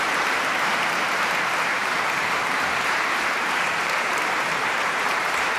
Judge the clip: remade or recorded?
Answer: remade